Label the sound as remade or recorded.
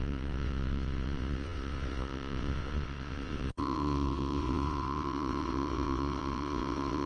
remade